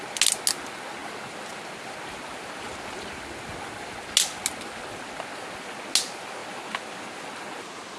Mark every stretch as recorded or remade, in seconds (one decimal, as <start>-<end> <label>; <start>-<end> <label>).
0.0-8.0 recorded